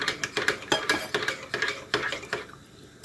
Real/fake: real